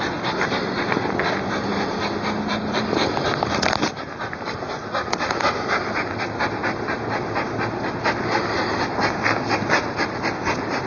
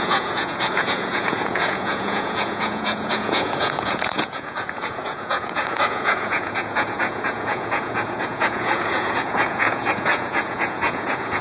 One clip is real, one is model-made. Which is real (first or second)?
first